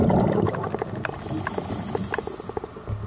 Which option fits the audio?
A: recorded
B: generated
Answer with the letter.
A